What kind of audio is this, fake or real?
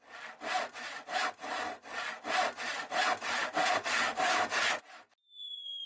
real